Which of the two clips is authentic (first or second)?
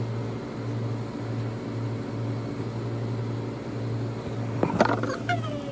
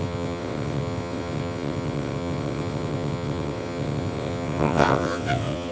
first